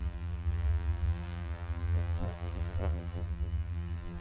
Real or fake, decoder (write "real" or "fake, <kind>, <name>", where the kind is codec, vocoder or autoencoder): fake, vocoder, BigVGAN v2